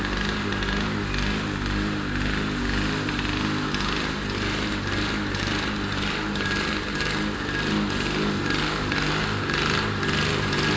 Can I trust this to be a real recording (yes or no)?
yes